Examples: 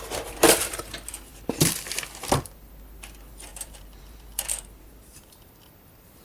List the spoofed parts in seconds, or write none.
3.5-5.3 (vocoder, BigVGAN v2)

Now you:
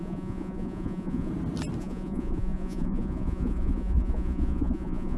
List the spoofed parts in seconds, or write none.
0.0-1.3 (vocoder, Vocos); 1.8-5.2

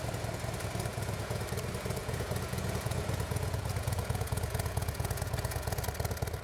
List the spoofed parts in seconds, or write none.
0.9-1.4 (vocoder, Vocos); 2.0-5.8

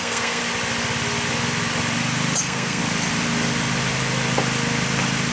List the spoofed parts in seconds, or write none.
0.0-0.4 (codec, SNAC); 2.4-2.8

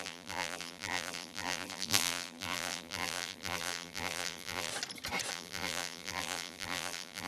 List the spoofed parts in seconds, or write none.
0.0-4.7 (vocoder, BigVGAN v2); 5.3-7.3

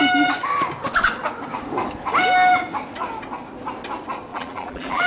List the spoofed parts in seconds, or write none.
4.3-5.1 (vocoder, BigVGAN v2)

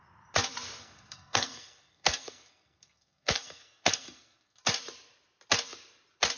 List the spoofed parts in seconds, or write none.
0.8-4.6 (codec, SNAC)

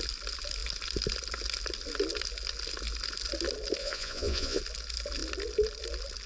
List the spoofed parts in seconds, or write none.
3.8-4.6 (vocoder, Vocos)